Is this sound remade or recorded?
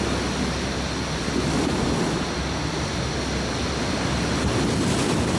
recorded